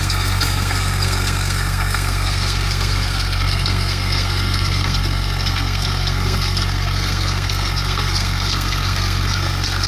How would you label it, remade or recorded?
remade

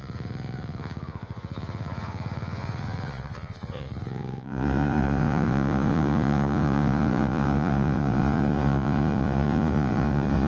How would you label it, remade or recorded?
remade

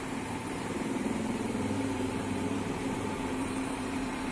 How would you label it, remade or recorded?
remade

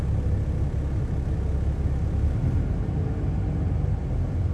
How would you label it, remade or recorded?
recorded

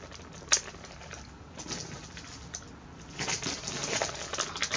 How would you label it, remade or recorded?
recorded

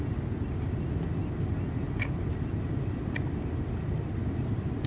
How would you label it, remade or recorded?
recorded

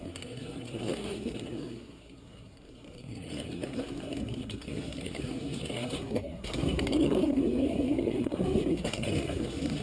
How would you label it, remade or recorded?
remade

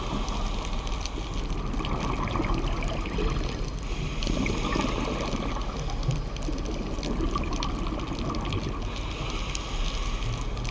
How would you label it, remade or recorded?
recorded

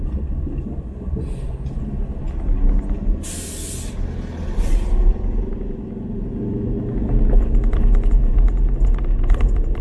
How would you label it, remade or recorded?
recorded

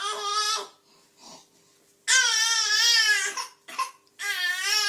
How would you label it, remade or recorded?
recorded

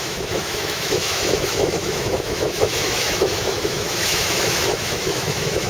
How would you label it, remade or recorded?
remade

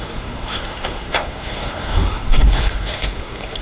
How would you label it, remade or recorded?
remade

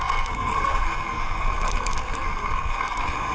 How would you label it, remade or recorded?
remade